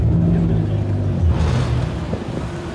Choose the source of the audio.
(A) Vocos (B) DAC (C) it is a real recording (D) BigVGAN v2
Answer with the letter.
C